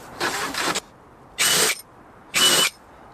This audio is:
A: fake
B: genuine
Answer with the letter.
B